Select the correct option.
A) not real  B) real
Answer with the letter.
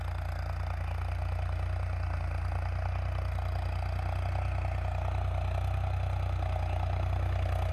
B